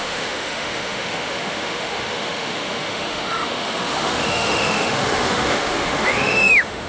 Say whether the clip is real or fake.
fake